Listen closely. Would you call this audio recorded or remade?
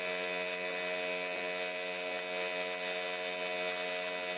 recorded